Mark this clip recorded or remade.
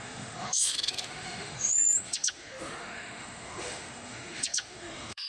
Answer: remade